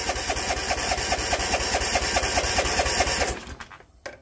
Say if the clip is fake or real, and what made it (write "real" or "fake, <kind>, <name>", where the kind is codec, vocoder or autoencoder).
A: real